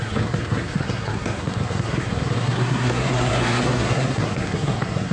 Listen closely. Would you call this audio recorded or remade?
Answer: remade